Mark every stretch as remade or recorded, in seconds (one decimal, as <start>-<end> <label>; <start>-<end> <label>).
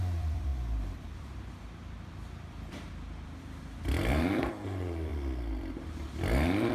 0.0-5.1 remade; 5.1-5.6 recorded; 5.6-6.7 remade